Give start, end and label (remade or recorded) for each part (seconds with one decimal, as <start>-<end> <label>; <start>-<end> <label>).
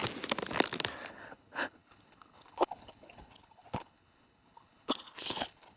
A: 0.0-1.1 recorded; 1.1-5.8 remade